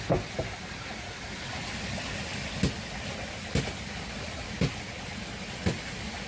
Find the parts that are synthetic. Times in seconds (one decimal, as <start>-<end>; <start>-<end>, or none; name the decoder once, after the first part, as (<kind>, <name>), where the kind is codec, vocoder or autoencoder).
none